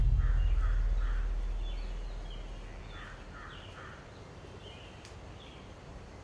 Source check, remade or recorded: recorded